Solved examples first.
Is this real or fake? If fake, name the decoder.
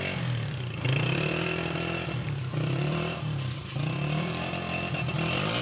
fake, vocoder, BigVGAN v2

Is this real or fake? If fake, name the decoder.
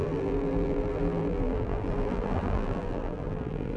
fake, vocoder, BigVGAN v2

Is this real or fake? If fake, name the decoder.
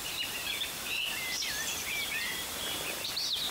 fake, vocoder, BigVGAN v2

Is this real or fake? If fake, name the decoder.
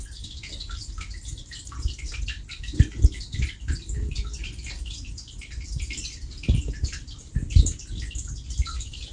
real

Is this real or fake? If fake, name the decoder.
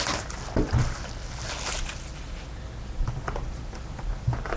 real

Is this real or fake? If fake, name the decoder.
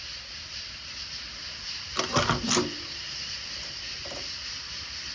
real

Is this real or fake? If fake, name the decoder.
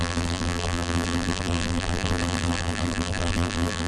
fake, vocoder, BigVGAN v2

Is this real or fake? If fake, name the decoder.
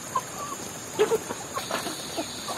real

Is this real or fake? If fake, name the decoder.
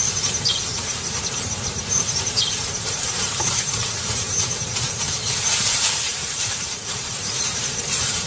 fake, vocoder, BigVGAN v2